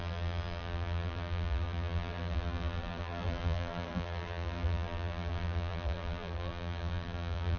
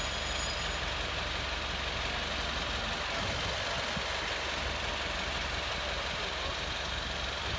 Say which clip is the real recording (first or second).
second